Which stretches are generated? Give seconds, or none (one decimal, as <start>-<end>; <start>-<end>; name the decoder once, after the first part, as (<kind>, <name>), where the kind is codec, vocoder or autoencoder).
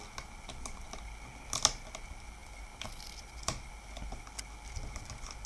2.4-4.3 (vocoder, BigVGAN v2)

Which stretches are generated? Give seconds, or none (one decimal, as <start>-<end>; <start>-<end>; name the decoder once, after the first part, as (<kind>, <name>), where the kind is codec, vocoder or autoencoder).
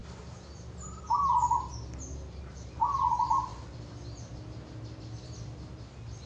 0.0-1.0 (vocoder, BigVGAN v2)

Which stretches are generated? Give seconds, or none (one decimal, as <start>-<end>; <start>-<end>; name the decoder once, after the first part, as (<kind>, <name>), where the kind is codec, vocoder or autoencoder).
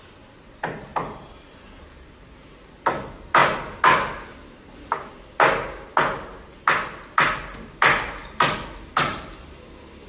0.9-2.3 (vocoder, BigVGAN v2)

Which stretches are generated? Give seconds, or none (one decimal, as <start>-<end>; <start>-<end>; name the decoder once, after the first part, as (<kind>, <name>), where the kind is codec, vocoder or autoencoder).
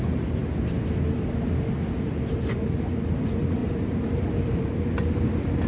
3.6-4.2 (vocoder, BigVGAN v2)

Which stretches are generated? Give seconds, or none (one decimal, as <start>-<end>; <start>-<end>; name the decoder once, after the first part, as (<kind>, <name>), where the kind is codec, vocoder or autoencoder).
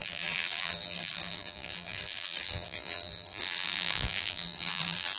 0.0-5.2 (vocoder, BigVGAN v2)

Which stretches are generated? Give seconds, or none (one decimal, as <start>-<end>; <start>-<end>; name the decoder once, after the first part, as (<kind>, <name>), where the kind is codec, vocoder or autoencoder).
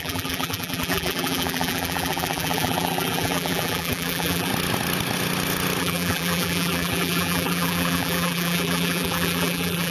0.0-4.5 (vocoder, BigVGAN v2); 5.8-9.9